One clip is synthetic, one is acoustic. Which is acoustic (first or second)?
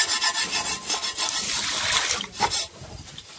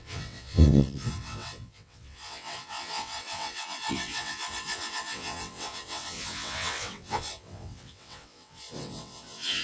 first